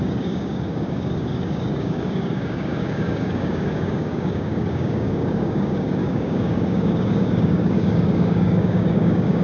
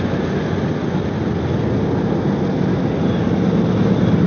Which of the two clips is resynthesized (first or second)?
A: first